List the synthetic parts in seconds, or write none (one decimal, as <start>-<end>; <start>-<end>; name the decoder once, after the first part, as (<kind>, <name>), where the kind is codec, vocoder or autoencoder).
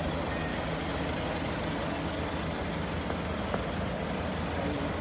none